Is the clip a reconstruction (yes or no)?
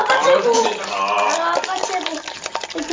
no